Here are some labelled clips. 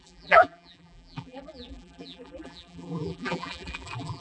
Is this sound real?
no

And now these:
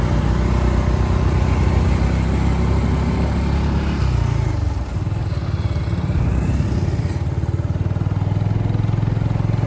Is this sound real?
yes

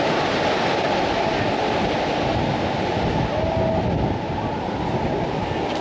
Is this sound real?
yes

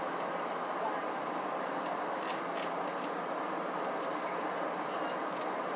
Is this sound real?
yes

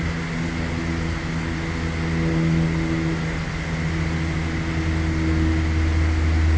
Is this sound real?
yes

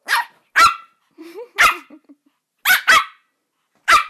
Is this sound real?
yes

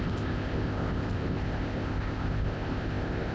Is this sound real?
no